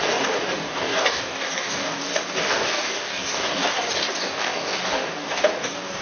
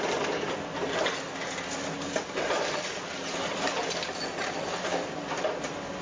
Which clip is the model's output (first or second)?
first